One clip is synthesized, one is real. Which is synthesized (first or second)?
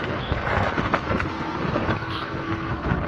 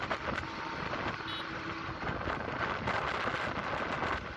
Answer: first